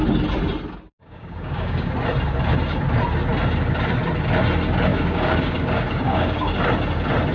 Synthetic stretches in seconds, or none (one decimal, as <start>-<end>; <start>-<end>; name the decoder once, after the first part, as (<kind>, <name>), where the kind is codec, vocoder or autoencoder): 1.0-1.9 (codec, DAC); 4.9-6.5